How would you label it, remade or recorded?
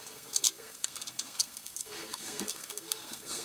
remade